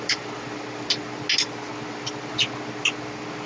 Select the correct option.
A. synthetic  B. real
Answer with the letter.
B